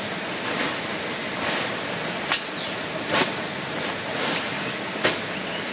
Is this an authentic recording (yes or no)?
yes